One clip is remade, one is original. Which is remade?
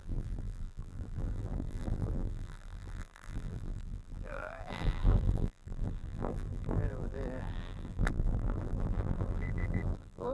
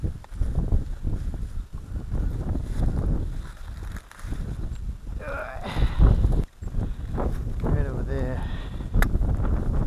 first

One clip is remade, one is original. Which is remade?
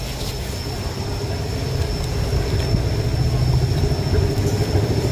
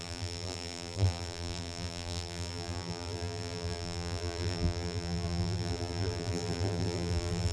second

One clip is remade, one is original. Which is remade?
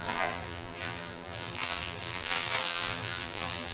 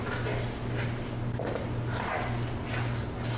first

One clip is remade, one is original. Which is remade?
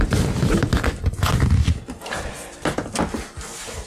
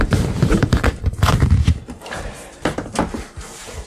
second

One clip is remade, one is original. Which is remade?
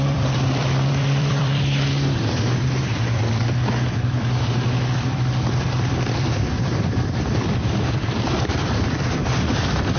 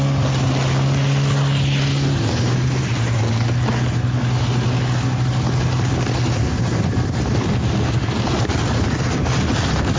first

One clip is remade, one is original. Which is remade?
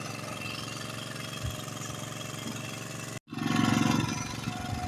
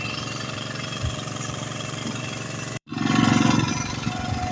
second